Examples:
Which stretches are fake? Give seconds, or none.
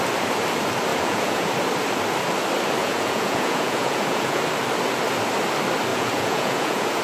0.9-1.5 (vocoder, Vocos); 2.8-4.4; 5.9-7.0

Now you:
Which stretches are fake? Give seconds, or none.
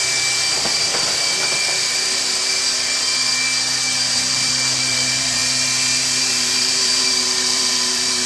4.1-5.4 (vocoder, BigVGAN v2); 6.2-8.3